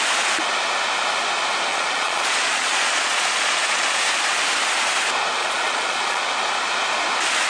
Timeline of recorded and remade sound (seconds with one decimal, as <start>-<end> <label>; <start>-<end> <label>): 0.0-1.7 recorded; 1.7-4.0 remade; 4.0-5.4 recorded; 5.4-6.2 remade; 6.2-7.5 recorded